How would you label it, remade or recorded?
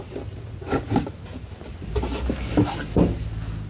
recorded